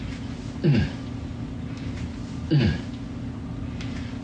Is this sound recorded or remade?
recorded